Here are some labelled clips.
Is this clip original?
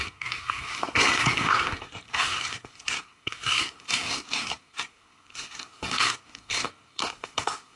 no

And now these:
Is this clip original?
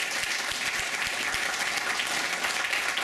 yes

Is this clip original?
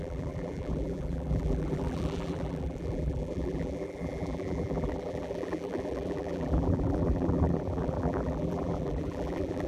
no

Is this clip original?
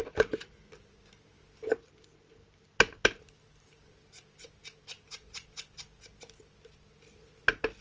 yes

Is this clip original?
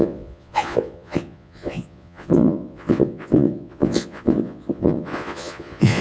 no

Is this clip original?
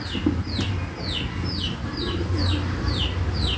yes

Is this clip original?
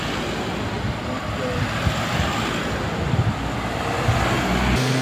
yes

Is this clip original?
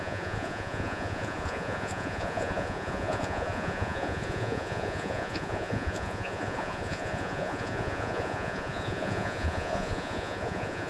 no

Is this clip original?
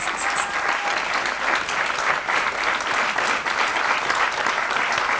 yes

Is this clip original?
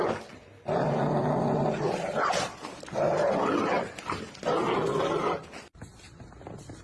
yes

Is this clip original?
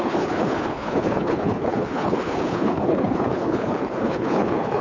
no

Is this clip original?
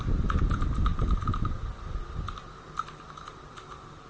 yes